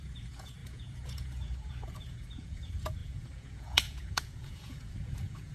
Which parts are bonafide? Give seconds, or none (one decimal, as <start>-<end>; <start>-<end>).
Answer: none